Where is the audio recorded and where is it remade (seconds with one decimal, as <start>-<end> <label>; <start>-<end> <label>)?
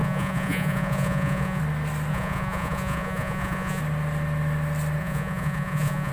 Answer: 0.0-1.6 remade; 1.6-2.1 recorded; 2.1-3.8 remade; 3.8-5.0 recorded; 5.0-6.1 remade